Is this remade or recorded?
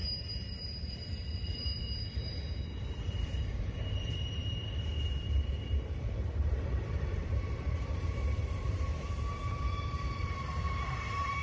remade